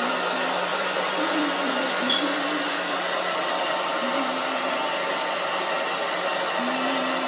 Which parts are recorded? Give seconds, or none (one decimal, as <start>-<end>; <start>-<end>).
0.0-0.7; 2.4-7.3